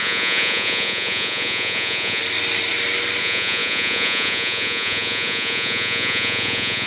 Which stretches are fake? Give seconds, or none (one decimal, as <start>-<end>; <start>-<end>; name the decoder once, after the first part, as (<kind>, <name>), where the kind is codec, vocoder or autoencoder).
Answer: 0.0-2.2 (vocoder, Vocos); 3.2-6.9